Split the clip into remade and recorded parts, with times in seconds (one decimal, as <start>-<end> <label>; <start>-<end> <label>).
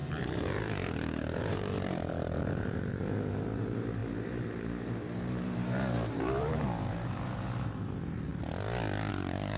0.0-8.3 remade; 8.3-9.1 recorded; 9.1-9.6 remade